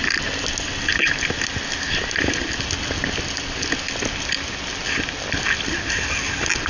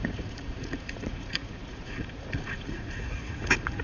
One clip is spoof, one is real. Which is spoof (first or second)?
second